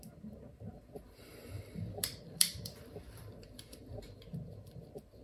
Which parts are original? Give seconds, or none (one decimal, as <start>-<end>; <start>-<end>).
0.0-1.3; 4.2-5.2